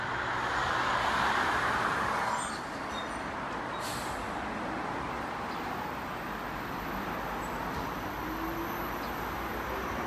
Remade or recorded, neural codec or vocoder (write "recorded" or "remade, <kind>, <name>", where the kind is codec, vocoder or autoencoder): recorded